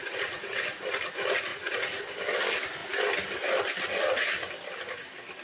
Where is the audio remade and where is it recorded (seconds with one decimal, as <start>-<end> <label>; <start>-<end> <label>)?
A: 0.0-0.6 remade; 0.6-1.5 recorded; 1.5-2.0 remade; 2.0-5.4 recorded